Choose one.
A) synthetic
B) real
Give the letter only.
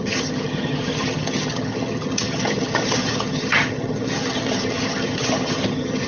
A